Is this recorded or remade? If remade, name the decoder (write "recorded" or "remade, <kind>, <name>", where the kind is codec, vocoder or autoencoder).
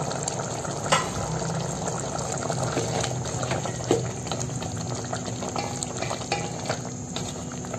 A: recorded